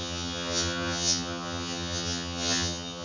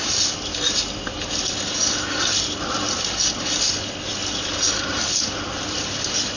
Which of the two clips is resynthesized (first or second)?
first